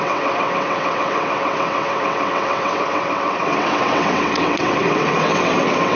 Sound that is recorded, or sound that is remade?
remade